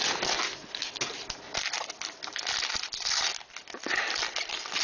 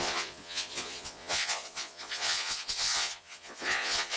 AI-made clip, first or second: second